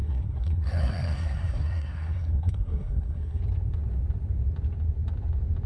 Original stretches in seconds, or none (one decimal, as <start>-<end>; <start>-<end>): 3.4-5.7